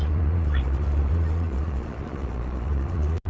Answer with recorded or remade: remade